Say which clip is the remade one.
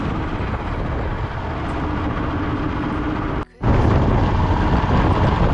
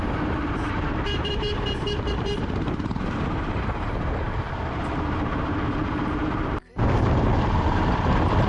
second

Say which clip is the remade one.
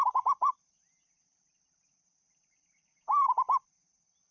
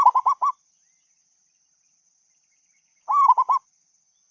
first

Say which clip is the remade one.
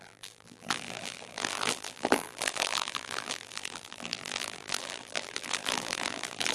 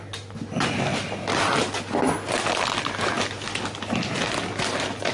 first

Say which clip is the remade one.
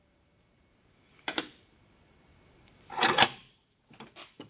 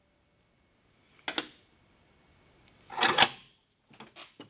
first